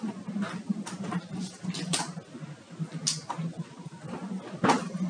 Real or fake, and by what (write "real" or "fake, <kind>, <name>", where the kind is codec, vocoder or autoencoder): real